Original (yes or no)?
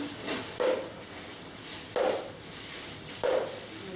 yes